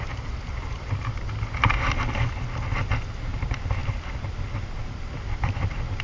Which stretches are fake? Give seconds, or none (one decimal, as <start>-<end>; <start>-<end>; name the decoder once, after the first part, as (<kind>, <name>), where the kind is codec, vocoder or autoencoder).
none